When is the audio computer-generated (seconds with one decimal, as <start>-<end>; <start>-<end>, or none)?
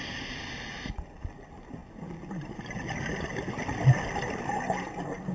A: none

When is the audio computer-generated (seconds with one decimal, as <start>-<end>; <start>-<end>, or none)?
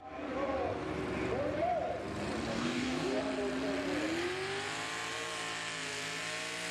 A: 2.5-3.2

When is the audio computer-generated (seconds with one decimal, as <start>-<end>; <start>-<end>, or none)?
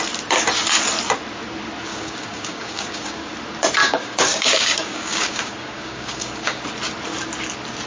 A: 1.9-3.3; 3.8-6.6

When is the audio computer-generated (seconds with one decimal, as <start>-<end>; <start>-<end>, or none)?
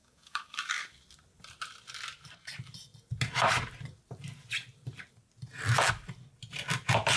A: 0.0-1.0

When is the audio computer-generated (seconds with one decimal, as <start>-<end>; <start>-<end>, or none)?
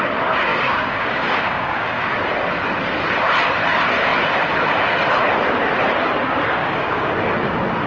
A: 0.5-2.0; 6.6-7.1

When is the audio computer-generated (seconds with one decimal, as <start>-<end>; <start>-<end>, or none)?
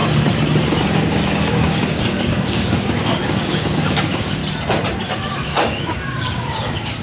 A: 0.9-4.4; 5.3-7.0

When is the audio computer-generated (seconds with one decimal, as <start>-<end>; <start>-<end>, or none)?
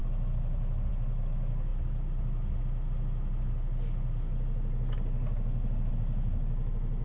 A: none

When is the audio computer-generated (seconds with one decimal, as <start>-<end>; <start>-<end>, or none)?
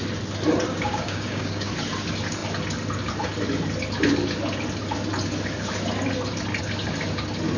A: 0.7-1.7